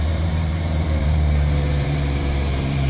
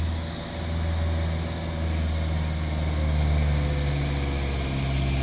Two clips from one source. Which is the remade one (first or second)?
first